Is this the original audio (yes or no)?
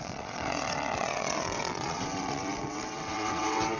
no